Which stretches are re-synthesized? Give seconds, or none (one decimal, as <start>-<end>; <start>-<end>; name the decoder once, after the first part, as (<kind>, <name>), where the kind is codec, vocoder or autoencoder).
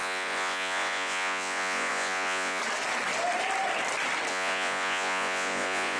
0.0-2.6 (vocoder, Vocos); 4.3-6.0